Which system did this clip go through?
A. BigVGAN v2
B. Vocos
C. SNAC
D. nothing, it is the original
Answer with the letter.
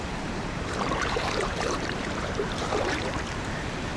A